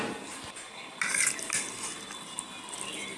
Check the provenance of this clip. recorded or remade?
recorded